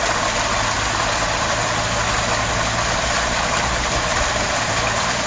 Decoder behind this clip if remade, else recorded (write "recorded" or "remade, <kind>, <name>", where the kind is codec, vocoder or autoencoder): recorded